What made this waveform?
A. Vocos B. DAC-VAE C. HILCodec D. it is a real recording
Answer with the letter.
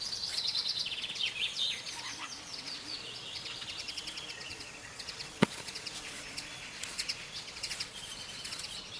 A